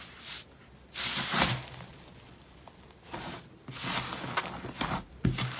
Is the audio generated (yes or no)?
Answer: no